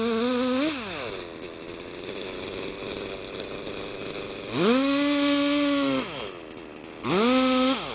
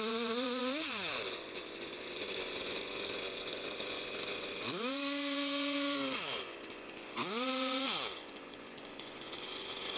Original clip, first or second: first